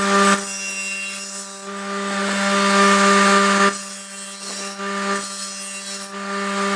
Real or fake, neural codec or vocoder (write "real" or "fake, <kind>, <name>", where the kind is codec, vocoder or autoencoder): real